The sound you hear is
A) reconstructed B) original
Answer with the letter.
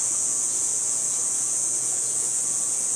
A